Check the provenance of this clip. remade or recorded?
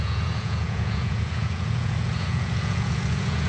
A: remade